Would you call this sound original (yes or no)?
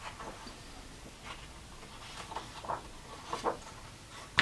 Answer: yes